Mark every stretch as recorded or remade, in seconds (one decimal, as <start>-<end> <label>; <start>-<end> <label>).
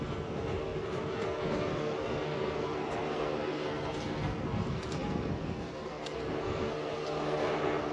0.0-7.9 remade